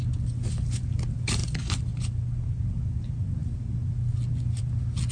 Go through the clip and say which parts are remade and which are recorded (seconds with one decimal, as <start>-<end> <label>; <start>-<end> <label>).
0.0-5.1 recorded